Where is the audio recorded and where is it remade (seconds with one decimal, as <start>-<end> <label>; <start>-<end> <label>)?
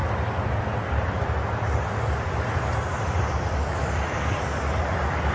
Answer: 0.0-5.3 recorded